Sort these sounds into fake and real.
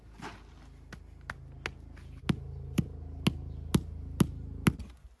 real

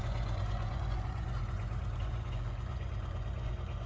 fake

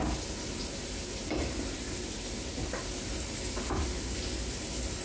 real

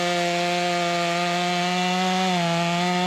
real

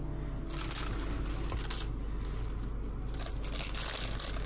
real